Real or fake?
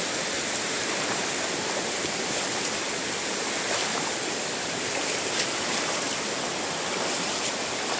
real